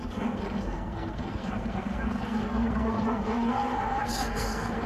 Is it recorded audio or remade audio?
remade